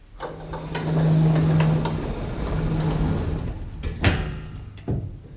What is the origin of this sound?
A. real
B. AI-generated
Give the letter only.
A